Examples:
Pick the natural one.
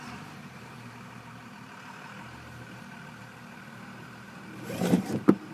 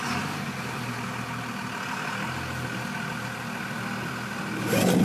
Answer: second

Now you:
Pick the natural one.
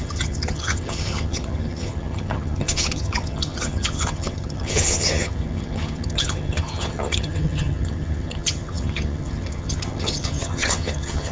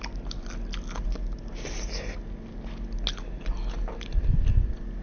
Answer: second